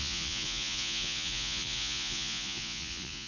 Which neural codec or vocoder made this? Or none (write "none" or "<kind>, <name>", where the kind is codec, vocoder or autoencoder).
vocoder, Vocos